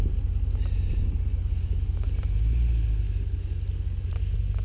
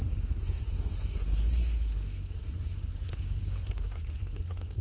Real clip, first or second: first